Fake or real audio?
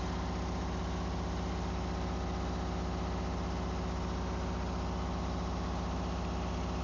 real